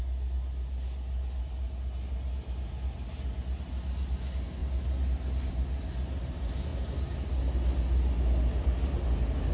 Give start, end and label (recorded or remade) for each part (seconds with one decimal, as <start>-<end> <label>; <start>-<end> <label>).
0.0-9.5 recorded